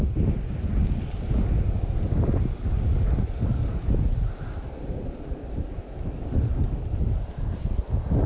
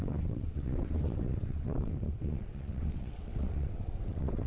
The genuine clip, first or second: first